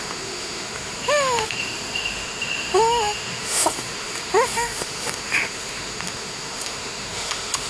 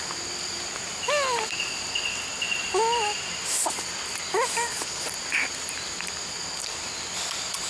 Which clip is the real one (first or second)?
second